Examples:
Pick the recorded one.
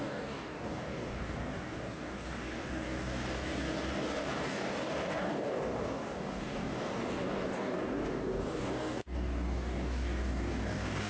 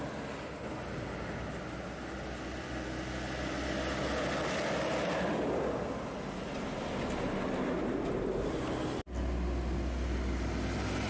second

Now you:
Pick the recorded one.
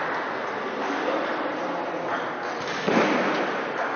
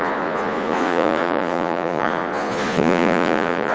first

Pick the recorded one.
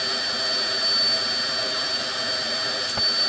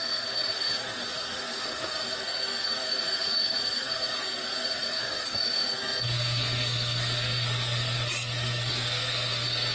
first